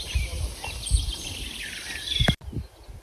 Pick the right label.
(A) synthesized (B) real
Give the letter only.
B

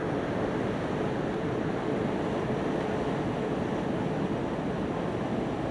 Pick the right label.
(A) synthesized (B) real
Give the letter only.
A